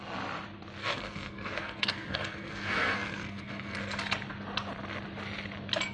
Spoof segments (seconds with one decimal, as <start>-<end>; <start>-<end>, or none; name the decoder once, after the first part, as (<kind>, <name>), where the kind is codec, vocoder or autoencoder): 0.8-4.0 (codec, SNAC)